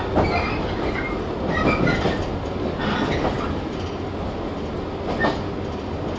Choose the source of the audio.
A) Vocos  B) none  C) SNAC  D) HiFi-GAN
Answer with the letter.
B